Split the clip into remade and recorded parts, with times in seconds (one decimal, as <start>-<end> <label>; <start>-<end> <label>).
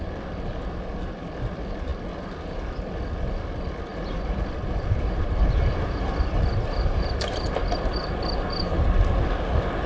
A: 0.0-3.9 recorded; 3.9-8.1 remade; 8.1-9.9 recorded